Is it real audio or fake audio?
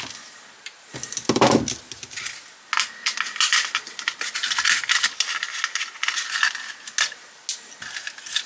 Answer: real